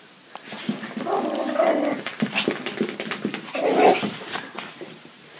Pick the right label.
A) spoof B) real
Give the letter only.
B